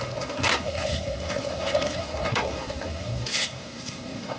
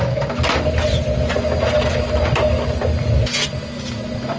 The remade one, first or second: first